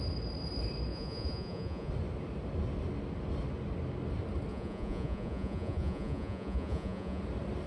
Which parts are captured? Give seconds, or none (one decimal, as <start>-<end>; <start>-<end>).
0.0-0.9; 1.9-4.5; 7.2-7.7